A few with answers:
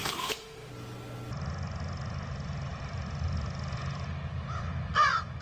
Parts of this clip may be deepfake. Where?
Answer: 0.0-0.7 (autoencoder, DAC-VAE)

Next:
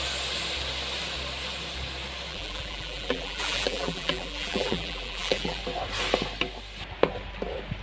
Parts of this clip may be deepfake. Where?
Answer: 2.3-5.6 (vocoder, BigVGAN v2)

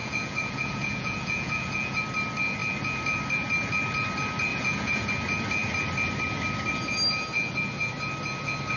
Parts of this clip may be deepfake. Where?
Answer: 0.0-2.0 (vocoder, Vocos); 4.5-5.1

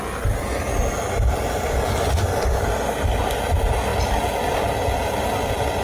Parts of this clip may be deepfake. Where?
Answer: none

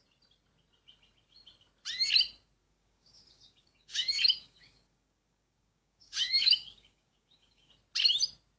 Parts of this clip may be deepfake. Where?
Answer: 2.6-7.7 (codec, DAC)

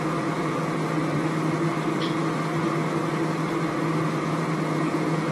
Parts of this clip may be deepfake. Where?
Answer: 0.0-1.0 (vocoder, Vocos); 4.2-5.3

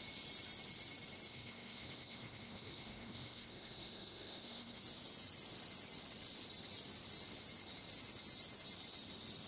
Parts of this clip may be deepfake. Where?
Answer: 1.3-4.8 (codec, SNAC)

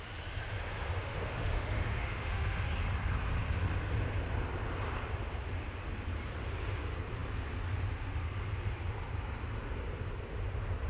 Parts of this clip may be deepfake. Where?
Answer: 1.0-2.7 (autoencoder, DAC-VAE)